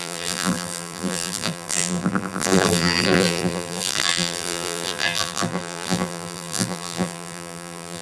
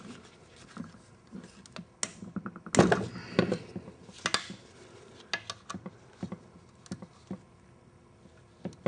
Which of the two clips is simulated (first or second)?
first